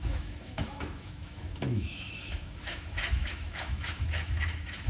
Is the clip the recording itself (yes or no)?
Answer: no